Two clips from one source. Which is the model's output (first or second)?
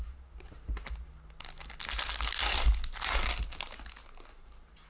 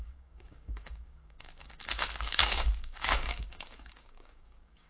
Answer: second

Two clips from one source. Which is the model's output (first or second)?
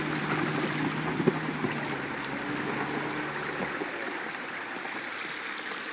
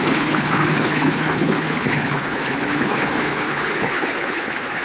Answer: second